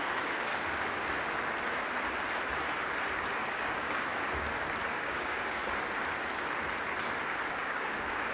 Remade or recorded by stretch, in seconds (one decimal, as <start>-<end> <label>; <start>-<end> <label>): 0.0-0.5 remade; 0.5-3.5 recorded; 3.5-4.1 remade; 4.1-4.9 recorded; 4.9-5.6 remade; 5.6-7.5 recorded; 7.5-8.3 remade